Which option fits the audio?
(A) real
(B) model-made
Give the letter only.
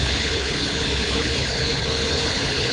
B